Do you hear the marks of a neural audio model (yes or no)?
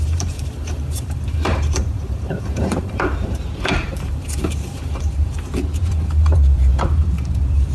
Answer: yes